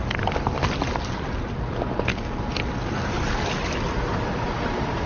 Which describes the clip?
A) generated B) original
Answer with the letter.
B